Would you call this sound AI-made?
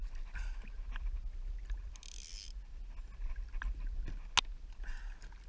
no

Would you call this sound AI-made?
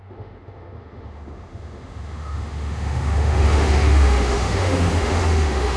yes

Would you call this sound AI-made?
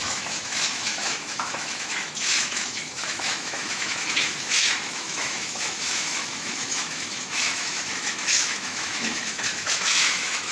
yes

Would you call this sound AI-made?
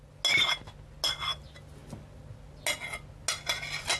no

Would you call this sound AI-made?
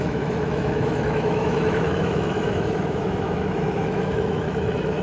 yes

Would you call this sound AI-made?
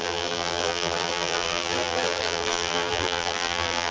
yes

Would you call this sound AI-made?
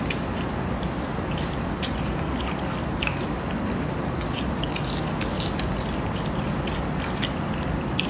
no